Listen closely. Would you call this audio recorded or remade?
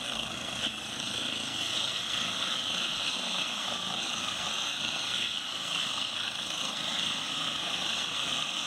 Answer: remade